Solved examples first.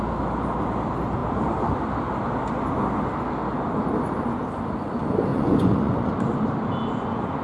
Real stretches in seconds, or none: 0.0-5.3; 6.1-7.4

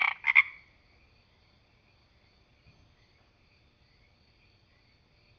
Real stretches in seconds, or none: 0.0-5.4

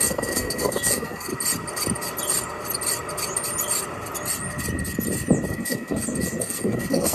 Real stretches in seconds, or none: 1.3-5.5

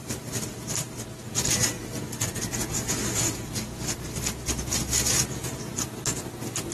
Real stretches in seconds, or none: 0.0-6.7